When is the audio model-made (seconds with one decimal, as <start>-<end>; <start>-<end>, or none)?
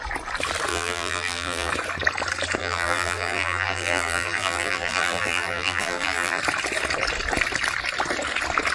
0.7-1.7; 2.6-6.4